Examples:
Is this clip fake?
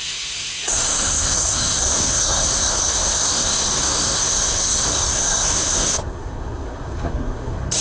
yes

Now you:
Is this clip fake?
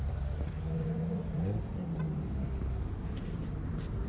yes